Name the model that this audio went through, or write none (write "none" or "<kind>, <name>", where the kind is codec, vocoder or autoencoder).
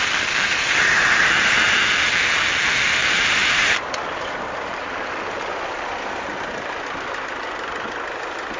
vocoder, BigVGAN v2